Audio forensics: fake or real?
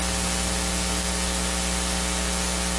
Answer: real